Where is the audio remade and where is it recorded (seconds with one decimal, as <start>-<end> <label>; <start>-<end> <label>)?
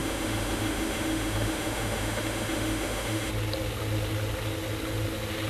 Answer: 0.0-3.3 remade; 3.3-5.5 recorded